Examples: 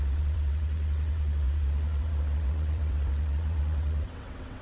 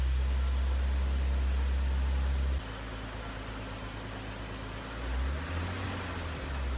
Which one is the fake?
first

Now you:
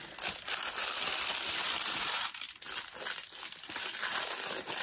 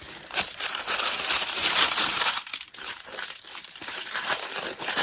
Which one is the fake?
second